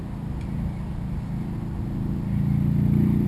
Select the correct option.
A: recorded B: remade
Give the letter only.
A